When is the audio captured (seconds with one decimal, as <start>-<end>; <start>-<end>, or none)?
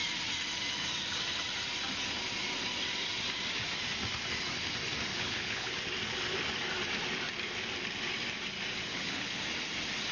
0.0-5.1; 5.7-8.9; 9.4-10.1